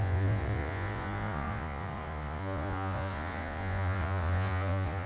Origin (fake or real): fake